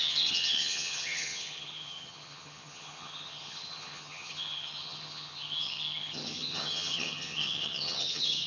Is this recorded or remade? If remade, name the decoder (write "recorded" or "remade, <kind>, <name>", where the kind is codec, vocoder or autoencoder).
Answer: remade, vocoder, HiFi-GAN